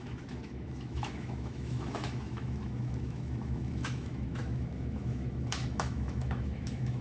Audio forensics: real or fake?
fake